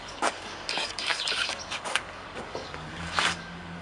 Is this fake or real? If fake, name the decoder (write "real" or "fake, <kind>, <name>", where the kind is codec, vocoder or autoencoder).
fake, codec, DAC